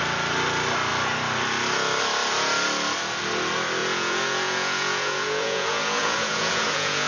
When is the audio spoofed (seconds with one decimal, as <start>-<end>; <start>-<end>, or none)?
3.8-7.1